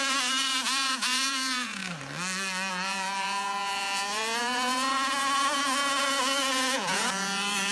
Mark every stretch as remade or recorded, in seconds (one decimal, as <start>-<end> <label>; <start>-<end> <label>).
0.0-1.8 remade; 1.8-2.7 recorded; 2.7-7.7 remade

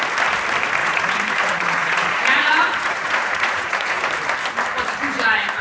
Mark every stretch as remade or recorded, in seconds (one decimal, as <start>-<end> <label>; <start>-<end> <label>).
0.0-0.8 recorded; 0.8-4.1 remade; 4.1-5.6 recorded

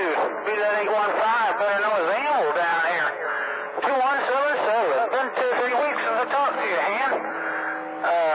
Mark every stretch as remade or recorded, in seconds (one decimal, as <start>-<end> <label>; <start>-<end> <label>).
0.0-2.7 recorded; 2.7-3.9 remade; 3.9-6.6 recorded; 6.6-7.5 remade; 7.5-8.3 recorded

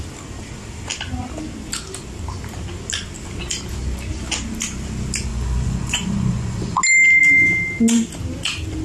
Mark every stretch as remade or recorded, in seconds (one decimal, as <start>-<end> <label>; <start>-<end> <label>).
0.0-5.3 recorded; 5.3-6.8 remade; 6.8-8.8 recorded

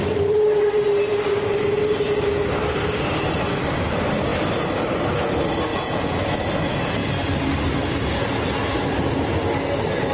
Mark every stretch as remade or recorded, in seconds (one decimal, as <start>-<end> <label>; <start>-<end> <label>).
0.0-5.7 recorded; 5.7-6.2 remade; 6.2-10.1 recorded

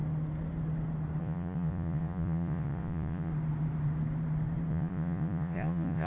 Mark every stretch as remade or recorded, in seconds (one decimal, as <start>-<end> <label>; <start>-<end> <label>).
0.0-1.2 recorded; 1.2-3.3 remade; 3.3-4.7 recorded; 4.7-6.1 remade

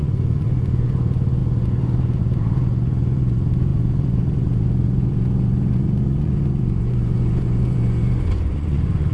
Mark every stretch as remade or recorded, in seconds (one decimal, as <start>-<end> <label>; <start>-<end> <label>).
0.0-9.1 remade